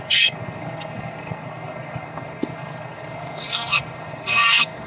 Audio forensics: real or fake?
fake